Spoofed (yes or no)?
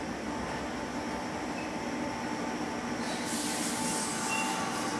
no